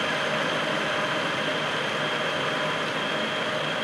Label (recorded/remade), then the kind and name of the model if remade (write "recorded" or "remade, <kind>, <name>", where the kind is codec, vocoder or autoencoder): recorded